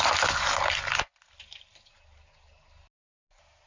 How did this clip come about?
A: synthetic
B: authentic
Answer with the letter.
B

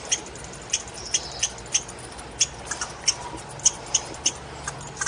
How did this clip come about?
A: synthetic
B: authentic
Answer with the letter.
B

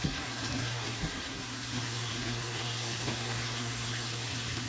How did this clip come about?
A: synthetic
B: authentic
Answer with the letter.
A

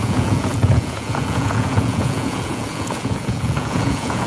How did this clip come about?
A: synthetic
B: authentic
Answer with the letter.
A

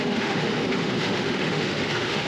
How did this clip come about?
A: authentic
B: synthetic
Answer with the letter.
B